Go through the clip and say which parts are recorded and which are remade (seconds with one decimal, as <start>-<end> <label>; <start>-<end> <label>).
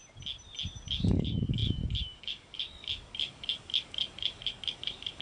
0.0-0.9 recorded; 0.9-5.2 remade